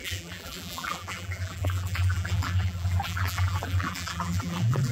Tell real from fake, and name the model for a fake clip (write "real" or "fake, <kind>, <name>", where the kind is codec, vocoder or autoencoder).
fake, vocoder, BigVGAN v2